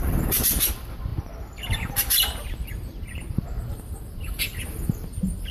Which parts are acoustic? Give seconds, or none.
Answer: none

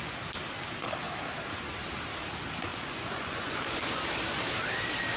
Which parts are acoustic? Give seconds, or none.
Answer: 0.0-2.7; 4.0-5.2

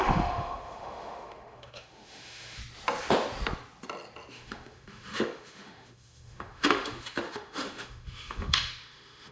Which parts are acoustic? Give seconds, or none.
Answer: 2.6-4.3

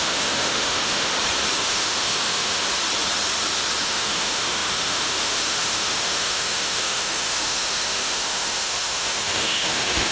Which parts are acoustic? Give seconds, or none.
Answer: 1.1-1.6; 2.6-3.8

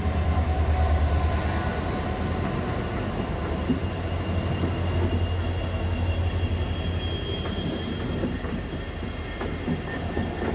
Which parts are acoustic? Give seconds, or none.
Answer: 0.0-10.5

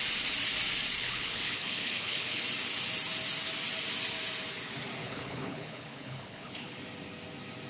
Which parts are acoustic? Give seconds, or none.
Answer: 0.0-1.0; 2.4-5.0; 6.8-7.7

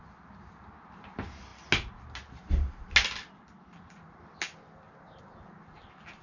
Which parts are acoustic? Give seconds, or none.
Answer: 0.0-6.2